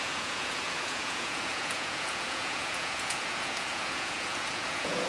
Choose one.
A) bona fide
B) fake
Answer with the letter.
B